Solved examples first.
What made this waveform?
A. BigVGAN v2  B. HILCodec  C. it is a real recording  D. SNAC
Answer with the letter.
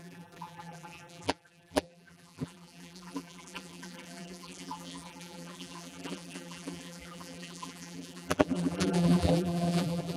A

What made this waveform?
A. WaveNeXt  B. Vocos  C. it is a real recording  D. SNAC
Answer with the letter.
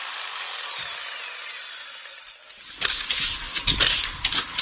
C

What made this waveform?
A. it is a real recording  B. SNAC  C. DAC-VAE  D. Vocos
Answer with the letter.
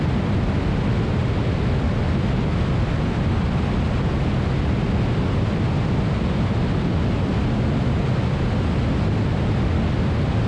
A